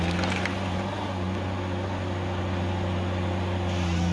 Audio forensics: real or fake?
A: real